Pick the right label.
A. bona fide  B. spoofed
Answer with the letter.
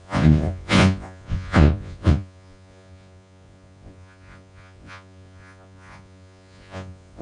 B